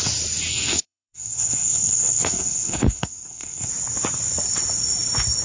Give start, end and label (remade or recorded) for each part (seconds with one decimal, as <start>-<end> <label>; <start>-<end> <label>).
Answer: 0.0-0.5 recorded; 0.5-3.7 remade; 3.7-5.4 recorded